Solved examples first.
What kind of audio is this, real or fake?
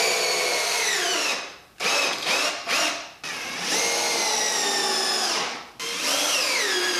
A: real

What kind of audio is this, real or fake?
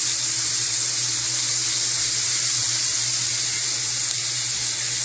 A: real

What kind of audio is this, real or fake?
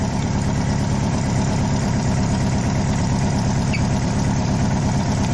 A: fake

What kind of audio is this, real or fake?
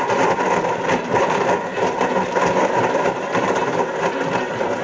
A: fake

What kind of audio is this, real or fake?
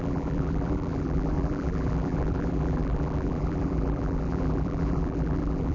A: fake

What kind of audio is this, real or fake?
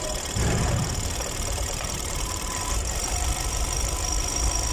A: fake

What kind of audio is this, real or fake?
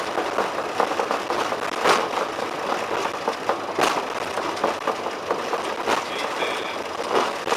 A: real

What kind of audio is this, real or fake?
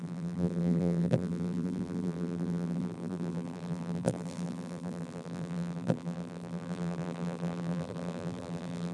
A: fake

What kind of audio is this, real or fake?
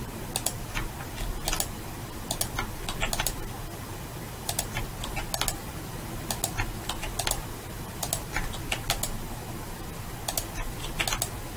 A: real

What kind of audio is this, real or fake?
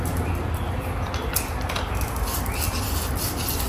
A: real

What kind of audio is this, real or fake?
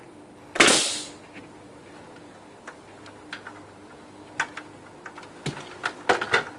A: real